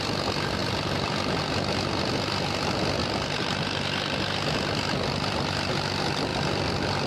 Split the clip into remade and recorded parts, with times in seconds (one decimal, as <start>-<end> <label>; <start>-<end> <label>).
0.0-0.6 recorded; 0.6-1.4 remade; 1.4-3.0 recorded; 3.0-3.9 remade; 3.9-6.3 recorded; 6.3-7.1 remade